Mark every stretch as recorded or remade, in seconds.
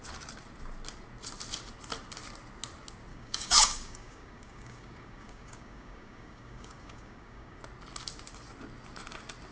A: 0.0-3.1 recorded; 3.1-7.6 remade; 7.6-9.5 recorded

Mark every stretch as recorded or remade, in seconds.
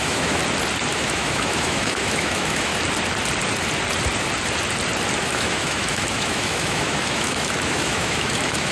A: 0.0-0.4 remade; 0.4-0.9 recorded; 0.9-2.7 remade; 2.7-5.2 recorded; 5.2-8.7 remade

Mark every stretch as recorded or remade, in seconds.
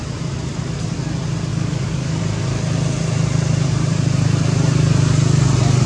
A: 0.0-1.5 recorded; 1.5-2.2 remade; 2.2-5.9 recorded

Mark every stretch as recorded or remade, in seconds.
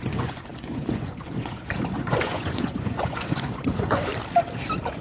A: 0.0-4.1 remade; 4.1-5.0 recorded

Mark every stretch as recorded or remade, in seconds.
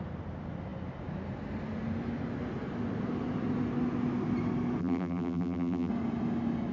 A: 0.0-4.8 recorded; 4.8-5.9 remade; 5.9-6.7 recorded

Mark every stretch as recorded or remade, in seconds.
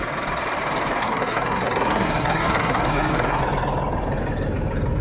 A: 0.0-1.0 recorded; 1.0-3.4 remade; 3.4-5.0 recorded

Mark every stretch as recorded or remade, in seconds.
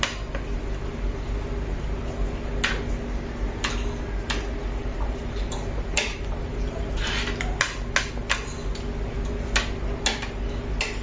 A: 0.0-4.8 recorded; 4.8-7.1 remade; 7.1-11.0 recorded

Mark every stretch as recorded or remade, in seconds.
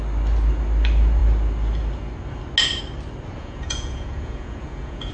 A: 0.0-3.4 recorded; 3.4-5.1 remade